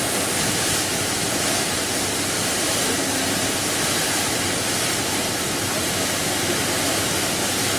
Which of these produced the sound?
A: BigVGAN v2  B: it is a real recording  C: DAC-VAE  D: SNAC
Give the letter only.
A